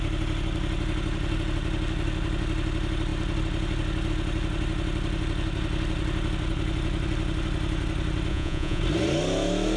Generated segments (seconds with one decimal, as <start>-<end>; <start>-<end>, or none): 8.3-8.8

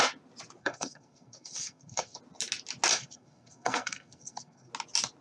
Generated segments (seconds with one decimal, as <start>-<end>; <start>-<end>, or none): 0.6-2.2; 2.9-4.7

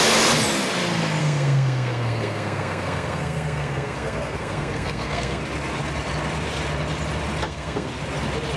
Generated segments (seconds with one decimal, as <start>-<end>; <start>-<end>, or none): 1.2-5.4; 7.4-7.9

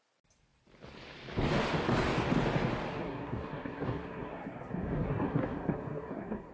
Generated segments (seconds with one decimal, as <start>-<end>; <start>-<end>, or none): 2.9-6.5

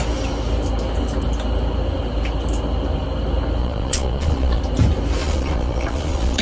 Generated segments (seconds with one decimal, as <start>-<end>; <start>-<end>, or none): 3.6-4.6; 5.2-6.4